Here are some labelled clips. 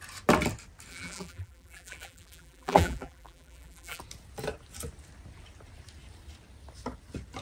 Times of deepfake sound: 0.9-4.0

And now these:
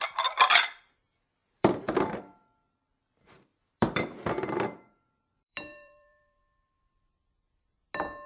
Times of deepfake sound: 1.4-6.4

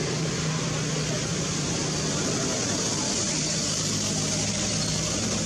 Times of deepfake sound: none

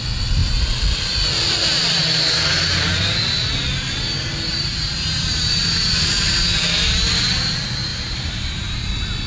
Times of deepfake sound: 4.5-5.9; 7.9-8.9